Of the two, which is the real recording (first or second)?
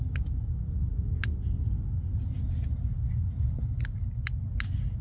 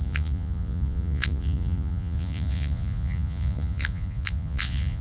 first